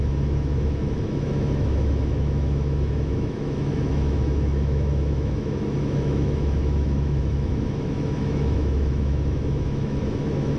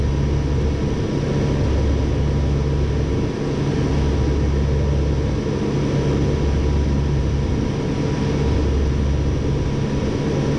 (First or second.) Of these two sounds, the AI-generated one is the first